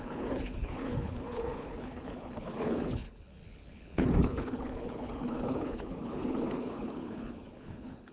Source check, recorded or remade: remade